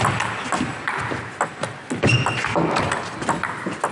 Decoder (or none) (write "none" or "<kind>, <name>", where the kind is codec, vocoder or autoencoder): none